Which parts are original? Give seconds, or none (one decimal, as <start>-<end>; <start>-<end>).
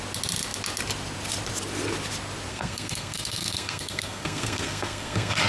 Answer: 0.0-2.5